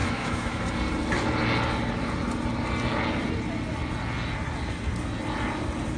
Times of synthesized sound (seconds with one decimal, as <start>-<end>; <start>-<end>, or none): 0.0-0.6